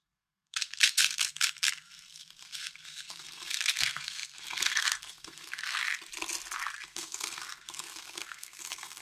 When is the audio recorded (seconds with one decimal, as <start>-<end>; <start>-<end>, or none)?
5.8-6.7